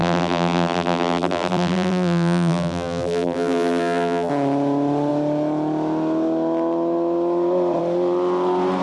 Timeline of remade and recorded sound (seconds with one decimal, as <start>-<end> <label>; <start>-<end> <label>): 0.0-4.3 remade; 4.3-8.8 recorded